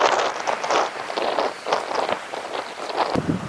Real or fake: real